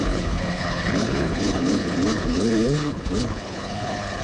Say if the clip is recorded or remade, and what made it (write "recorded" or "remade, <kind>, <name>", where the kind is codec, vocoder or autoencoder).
remade, codec, HILCodec